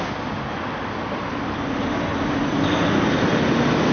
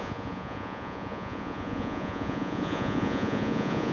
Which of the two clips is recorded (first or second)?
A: first